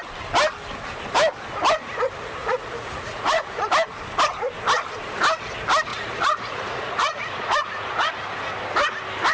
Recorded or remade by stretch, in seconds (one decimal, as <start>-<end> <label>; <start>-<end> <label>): 0.0-2.4 recorded; 2.4-3.7 remade; 3.7-5.9 recorded; 5.9-8.1 remade; 8.1-9.3 recorded